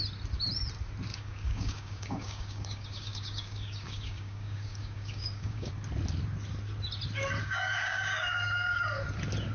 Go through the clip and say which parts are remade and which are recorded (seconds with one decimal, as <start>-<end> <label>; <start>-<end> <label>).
0.0-1.1 recorded; 1.1-5.7 remade; 5.7-7.4 recorded; 7.4-8.8 remade; 8.8-9.5 recorded